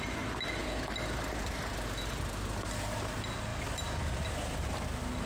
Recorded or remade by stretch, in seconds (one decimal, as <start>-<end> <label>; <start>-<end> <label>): 0.0-5.3 recorded